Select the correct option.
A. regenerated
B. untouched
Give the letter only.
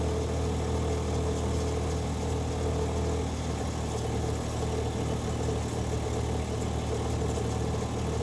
B